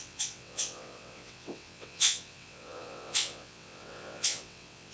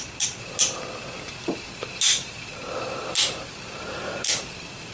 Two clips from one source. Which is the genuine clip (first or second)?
second